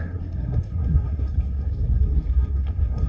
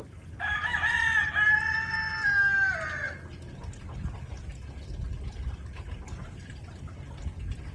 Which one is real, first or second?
second